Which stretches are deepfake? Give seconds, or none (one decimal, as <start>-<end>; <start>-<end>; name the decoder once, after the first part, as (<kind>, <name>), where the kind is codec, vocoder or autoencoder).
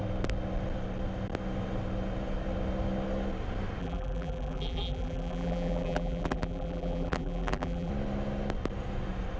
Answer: 3.8-7.9 (vocoder, BigVGAN v2)